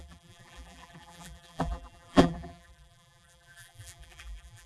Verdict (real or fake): fake